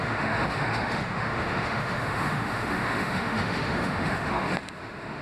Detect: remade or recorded remade